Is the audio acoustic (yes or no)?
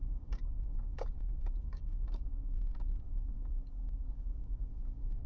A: no